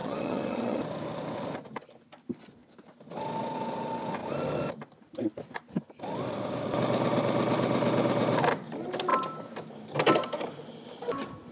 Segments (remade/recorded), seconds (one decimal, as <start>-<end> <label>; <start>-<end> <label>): 0.0-0.8 remade; 0.8-11.5 recorded